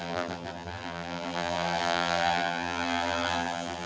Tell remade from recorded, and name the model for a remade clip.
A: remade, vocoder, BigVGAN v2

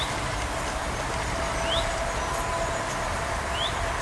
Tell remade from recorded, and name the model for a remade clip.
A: recorded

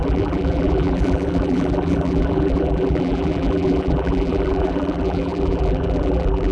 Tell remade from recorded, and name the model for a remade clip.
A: remade, vocoder, BigVGAN v2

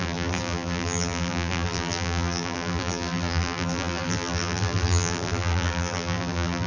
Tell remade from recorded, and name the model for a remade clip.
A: remade, vocoder, BigVGAN v2